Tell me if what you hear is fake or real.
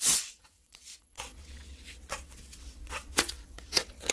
fake